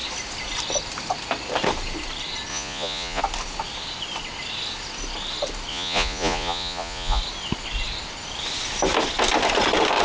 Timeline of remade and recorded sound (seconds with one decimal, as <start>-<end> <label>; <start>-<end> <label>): 0.0-2.5 recorded; 2.5-3.2 remade; 3.2-5.7 recorded; 5.7-7.2 remade; 7.2-10.0 recorded